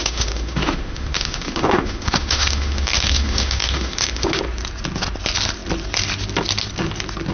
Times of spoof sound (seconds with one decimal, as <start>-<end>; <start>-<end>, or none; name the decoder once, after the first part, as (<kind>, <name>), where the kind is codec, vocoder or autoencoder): 0.0-4.4 (autoencoder, DAC-VAE)